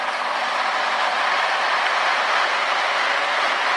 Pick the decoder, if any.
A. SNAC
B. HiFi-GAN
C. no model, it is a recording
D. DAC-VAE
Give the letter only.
C